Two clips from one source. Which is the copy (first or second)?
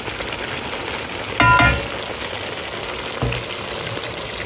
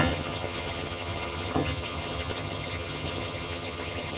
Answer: second